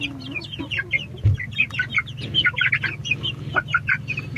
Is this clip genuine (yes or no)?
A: yes